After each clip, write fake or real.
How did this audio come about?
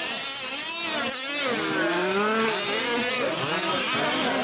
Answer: real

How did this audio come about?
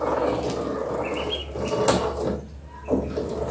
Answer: real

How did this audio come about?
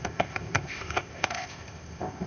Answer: fake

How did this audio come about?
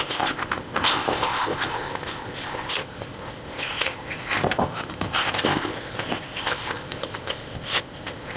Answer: fake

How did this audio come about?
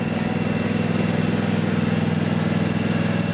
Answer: real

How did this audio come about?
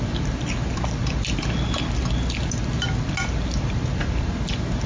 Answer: real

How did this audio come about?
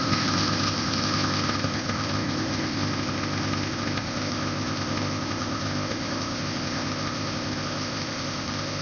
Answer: fake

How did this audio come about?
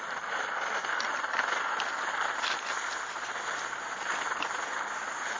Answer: real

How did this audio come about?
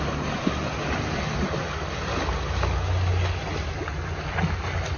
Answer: real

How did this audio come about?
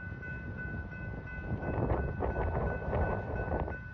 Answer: real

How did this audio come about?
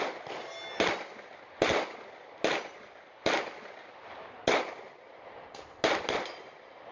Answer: real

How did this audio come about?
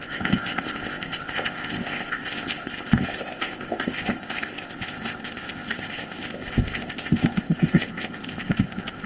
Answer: fake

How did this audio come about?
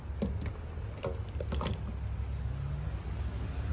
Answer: real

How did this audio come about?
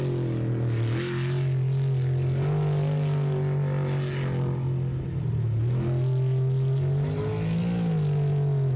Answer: real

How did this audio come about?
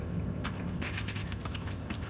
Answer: fake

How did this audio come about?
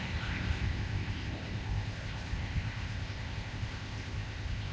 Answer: fake